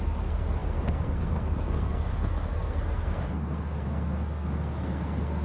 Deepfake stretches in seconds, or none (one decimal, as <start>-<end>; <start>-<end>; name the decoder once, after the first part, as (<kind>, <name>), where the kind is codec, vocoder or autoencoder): 0.0-5.4 (codec, SNAC)